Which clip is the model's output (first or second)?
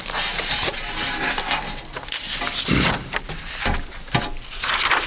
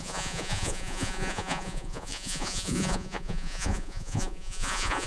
second